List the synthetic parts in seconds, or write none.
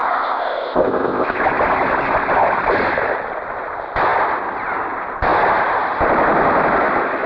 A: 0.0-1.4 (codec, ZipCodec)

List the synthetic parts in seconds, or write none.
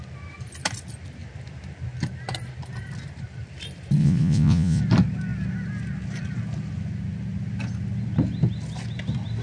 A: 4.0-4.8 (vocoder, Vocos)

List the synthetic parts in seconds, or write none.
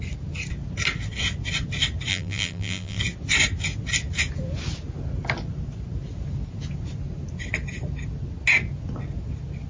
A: 2.1-3.0 (vocoder, BigVGAN v2)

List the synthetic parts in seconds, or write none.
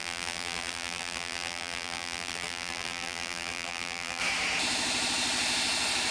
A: 0.0-4.2 (vocoder, BigVGAN v2)